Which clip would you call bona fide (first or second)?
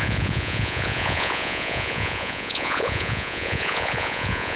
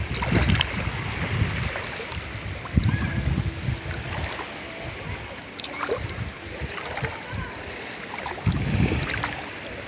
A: second